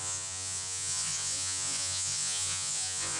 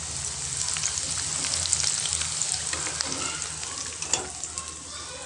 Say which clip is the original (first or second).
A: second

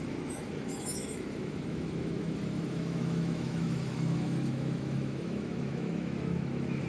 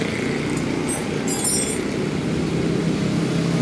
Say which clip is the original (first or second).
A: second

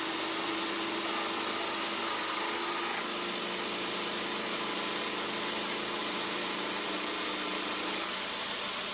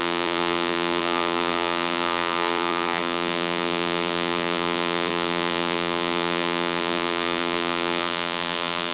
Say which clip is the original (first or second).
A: first